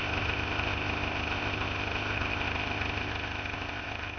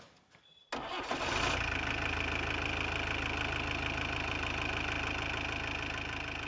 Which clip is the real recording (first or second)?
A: second